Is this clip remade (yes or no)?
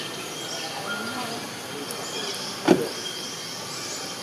no